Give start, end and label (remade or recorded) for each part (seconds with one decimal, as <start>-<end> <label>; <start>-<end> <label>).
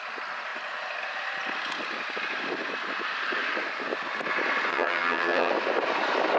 0.0-4.7 recorded; 4.7-5.5 remade; 5.5-6.4 recorded